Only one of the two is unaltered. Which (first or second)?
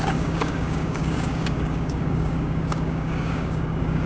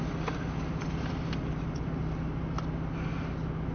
second